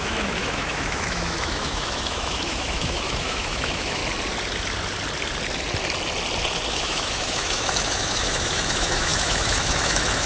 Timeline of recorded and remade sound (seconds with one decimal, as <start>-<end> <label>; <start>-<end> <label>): 0.0-4.0 remade; 4.0-6.7 recorded; 6.7-10.3 remade